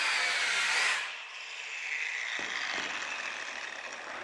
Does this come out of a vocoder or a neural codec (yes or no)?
no